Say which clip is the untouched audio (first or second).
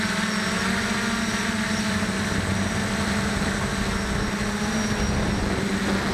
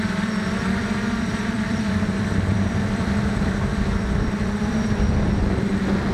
first